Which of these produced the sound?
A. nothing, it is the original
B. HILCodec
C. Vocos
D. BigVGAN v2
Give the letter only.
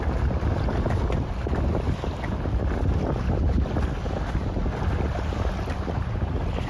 A